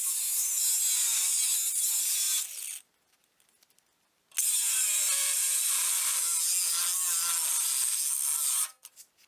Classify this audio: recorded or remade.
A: recorded